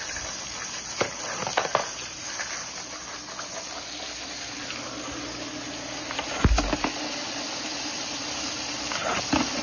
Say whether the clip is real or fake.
real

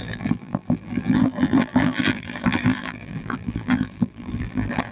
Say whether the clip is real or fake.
fake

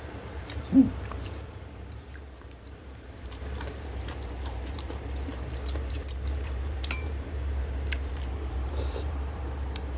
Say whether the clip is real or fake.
fake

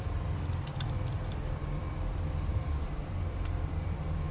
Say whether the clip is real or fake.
fake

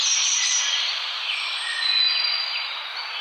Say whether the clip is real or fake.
real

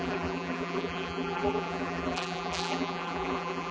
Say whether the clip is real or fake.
fake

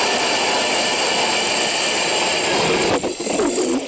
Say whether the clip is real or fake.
fake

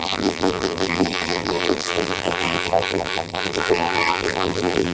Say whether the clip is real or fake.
fake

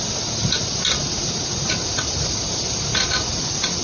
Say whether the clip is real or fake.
real